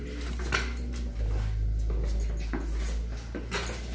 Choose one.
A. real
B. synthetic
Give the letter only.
A